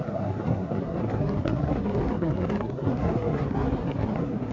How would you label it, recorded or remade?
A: remade